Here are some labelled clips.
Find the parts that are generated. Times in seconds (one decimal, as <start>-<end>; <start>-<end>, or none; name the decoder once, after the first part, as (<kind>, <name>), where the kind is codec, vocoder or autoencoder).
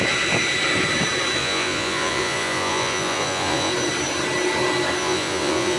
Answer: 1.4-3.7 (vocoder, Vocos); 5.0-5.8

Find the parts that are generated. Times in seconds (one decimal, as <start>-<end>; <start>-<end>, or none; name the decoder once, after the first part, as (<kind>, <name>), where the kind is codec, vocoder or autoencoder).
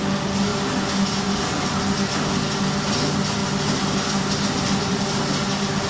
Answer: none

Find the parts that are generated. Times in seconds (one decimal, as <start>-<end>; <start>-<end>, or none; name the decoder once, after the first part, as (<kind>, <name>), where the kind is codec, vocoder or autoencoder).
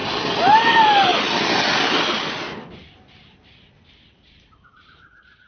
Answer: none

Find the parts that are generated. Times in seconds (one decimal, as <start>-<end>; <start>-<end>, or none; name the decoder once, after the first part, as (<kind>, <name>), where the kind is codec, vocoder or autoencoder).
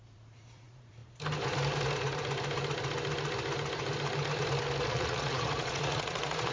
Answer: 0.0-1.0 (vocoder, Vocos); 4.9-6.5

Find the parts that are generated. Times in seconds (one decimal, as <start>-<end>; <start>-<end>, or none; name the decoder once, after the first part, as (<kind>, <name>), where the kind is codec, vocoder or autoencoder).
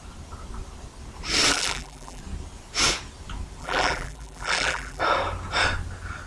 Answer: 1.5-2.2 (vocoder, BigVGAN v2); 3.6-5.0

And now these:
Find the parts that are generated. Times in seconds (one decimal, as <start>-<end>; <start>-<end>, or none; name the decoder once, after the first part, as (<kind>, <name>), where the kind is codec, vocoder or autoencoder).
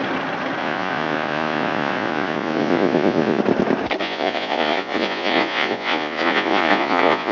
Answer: 0.6-3.4 (vocoder, Vocos); 4.0-7.3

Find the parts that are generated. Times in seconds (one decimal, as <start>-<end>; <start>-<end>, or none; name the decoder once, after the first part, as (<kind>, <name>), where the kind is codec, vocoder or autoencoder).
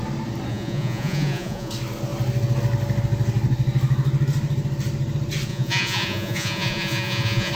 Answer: 0.5-1.7 (vocoder, Vocos); 5.5-7.5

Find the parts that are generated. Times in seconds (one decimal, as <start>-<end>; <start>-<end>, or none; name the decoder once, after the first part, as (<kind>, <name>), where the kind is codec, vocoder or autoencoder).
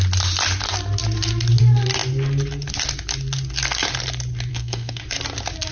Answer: 4.5-5.0 (codec, SNAC)